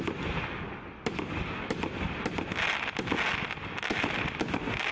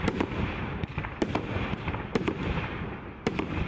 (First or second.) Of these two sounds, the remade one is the second